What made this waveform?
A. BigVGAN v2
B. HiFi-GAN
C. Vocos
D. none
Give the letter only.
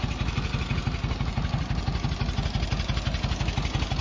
D